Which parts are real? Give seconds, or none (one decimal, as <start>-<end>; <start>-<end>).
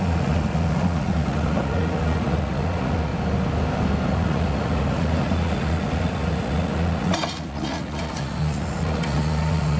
3.1-4.1